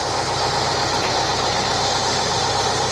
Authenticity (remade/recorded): recorded